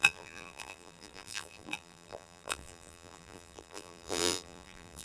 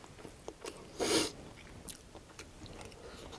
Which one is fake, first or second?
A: first